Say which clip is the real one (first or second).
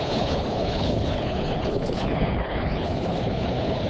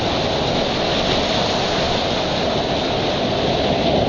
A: second